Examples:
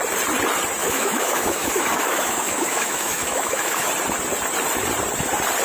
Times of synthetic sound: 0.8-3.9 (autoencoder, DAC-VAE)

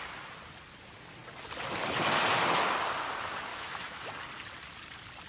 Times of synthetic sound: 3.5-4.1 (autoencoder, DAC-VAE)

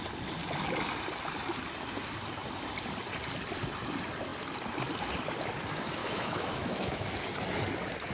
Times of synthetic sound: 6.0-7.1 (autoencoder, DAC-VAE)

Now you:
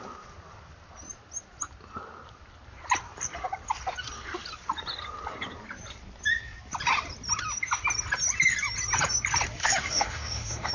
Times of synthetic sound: 9.6-10.7 (autoencoder, DAC-VAE)

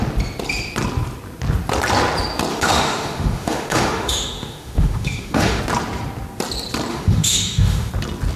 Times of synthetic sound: 2.5-5.6 (autoencoder, DAC-VAE); 6.9-7.9

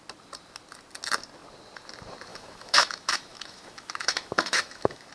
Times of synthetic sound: 2.3-5.1 (autoencoder, DAC-VAE)